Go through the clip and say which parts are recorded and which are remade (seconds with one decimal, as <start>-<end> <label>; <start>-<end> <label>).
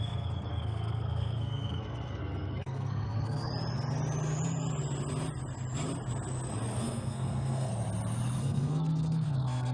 0.0-3.5 remade; 3.5-6.8 recorded; 6.8-7.7 remade; 7.7-8.4 recorded; 8.4-9.7 remade